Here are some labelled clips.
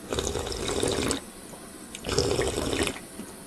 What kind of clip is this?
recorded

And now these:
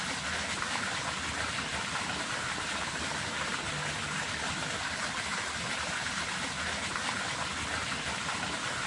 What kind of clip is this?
recorded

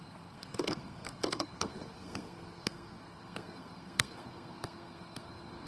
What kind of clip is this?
remade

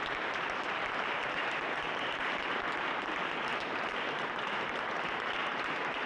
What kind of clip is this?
remade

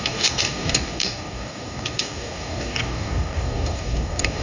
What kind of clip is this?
remade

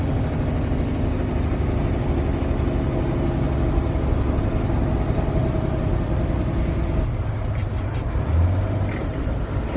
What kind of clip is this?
recorded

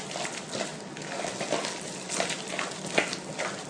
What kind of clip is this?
recorded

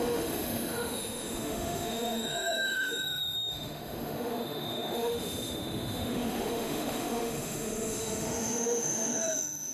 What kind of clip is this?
remade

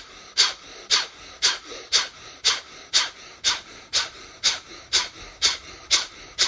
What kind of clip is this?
remade